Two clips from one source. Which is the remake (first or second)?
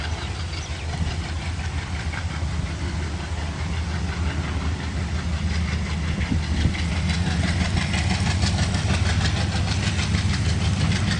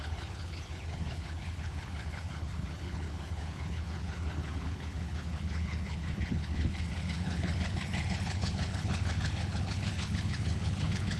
second